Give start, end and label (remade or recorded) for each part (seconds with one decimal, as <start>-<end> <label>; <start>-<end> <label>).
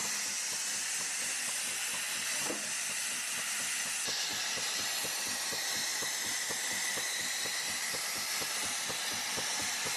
0.0-4.3 recorded; 4.3-4.8 remade; 4.8-7.5 recorded; 7.5-8.3 remade; 8.3-10.0 recorded